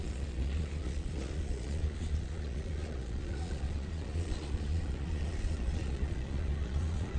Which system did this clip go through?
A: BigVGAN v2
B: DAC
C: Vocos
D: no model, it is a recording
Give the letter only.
C